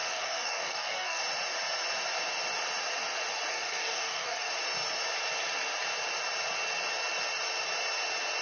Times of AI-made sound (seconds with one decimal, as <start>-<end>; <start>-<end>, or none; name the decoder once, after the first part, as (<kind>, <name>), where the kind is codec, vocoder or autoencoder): 0.0-1.2 (codec, DAC); 3.5-4.5